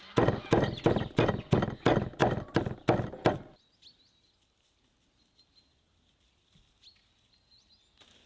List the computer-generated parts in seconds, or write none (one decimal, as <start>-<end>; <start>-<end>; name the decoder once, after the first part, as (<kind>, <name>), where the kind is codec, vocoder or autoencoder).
none